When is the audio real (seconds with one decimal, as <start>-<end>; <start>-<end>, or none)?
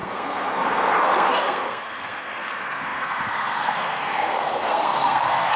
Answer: none